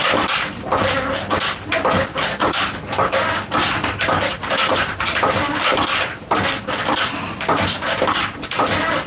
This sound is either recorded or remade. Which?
recorded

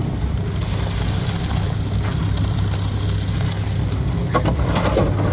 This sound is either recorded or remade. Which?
recorded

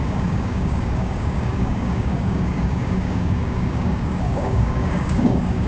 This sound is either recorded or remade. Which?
remade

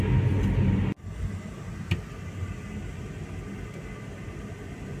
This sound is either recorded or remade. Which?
recorded